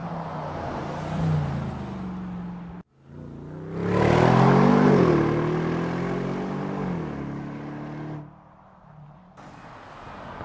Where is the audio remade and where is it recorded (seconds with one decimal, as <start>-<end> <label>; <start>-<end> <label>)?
0.0-10.4 recorded